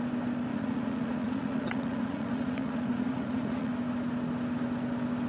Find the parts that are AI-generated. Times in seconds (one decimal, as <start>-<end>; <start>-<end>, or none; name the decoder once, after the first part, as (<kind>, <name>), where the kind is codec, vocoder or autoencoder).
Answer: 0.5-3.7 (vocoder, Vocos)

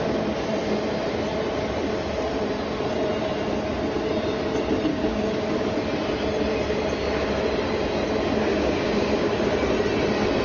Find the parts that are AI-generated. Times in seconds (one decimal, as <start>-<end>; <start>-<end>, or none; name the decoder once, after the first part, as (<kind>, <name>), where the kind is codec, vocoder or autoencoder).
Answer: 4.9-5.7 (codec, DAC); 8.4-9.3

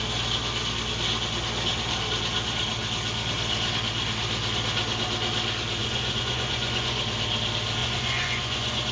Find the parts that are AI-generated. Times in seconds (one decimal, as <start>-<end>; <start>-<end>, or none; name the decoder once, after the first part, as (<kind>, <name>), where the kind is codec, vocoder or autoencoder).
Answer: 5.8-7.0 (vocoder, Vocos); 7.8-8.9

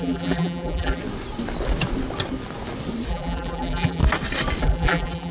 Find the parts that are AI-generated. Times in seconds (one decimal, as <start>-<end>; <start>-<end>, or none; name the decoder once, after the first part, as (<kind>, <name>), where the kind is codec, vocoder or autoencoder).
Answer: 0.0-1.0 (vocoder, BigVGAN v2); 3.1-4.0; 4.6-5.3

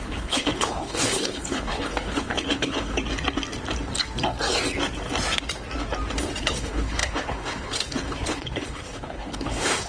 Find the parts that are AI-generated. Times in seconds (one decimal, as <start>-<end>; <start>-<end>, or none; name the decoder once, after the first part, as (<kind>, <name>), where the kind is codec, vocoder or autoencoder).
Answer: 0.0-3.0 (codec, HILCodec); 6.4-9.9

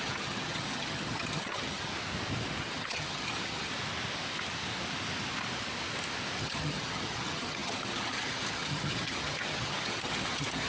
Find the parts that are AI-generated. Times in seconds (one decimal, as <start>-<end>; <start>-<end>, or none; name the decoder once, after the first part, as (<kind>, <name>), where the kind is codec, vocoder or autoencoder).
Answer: 0.0-1.9 (vocoder, HiFi-GAN); 2.6-3.7; 6.4-10.7